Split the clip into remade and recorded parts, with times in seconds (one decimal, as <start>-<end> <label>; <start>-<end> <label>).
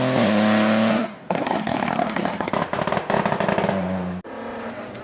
0.0-0.9 recorded; 0.9-2.5 remade; 2.5-5.0 recorded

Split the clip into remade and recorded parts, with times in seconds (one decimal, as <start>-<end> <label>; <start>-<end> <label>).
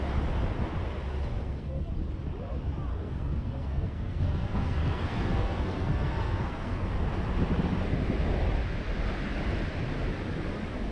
0.0-1.4 recorded; 1.4-1.9 remade; 1.9-2.9 recorded; 2.9-6.9 remade; 6.9-10.9 recorded